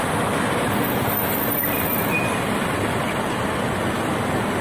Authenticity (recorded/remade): recorded